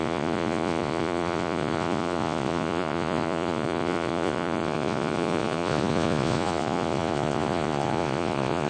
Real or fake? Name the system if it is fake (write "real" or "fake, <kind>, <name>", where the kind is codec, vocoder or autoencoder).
fake, vocoder, Vocos